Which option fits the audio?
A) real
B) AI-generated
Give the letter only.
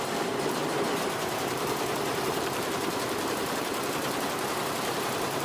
B